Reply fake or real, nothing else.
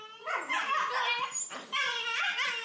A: fake